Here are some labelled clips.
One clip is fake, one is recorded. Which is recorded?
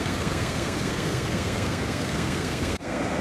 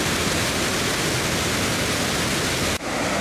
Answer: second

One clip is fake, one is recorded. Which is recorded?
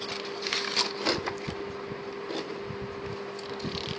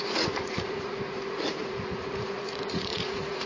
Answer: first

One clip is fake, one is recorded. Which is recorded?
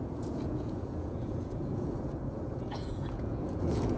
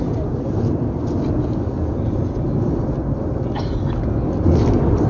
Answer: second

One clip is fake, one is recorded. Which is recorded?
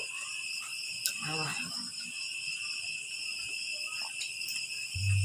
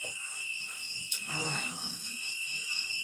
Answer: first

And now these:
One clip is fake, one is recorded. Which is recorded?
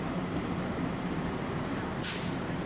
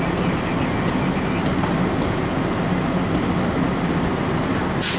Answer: second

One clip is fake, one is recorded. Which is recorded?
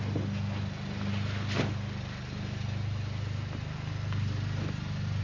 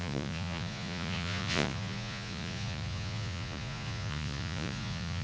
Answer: first